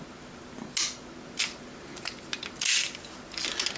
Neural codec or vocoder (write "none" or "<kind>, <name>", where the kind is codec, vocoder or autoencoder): none